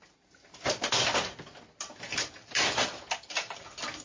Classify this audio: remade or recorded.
recorded